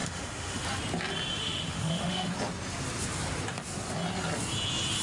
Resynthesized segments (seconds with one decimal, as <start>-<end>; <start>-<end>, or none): 0.0-0.6; 1.4-2.3